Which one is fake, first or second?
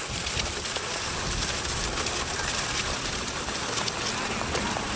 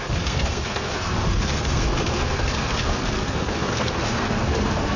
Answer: second